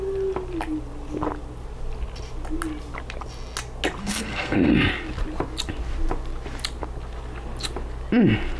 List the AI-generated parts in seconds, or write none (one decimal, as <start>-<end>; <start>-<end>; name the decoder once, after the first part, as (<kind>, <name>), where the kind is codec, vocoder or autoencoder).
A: 4.0-4.7 (codec, SNAC)